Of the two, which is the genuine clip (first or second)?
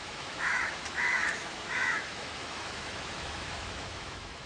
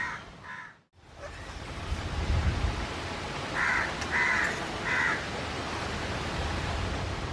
second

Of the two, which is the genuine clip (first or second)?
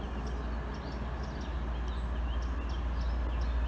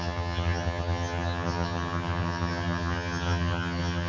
first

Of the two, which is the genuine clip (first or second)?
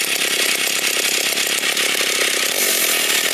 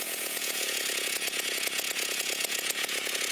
first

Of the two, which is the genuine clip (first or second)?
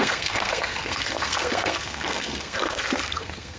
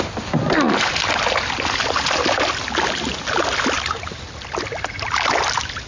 second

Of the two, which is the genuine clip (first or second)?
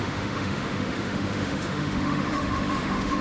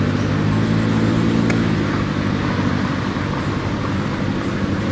second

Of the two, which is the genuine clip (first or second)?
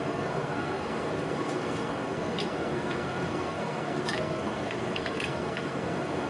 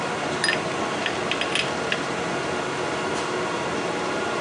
second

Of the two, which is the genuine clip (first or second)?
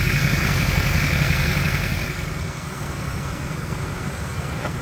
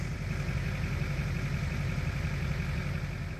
second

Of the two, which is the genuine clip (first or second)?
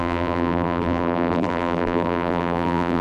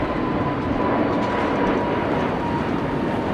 second